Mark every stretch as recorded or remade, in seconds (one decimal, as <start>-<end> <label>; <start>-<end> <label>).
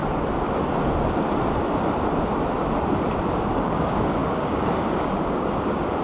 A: 0.0-3.4 recorded; 3.4-6.0 remade